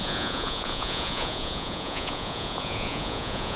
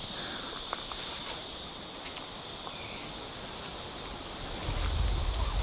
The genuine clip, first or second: second